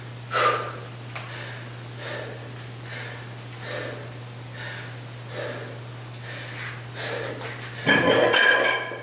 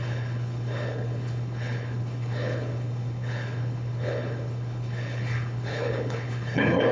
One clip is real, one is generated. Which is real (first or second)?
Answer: first